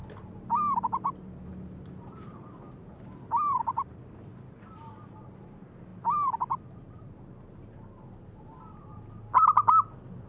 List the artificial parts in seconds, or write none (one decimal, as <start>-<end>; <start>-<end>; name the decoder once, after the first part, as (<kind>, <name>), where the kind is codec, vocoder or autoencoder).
none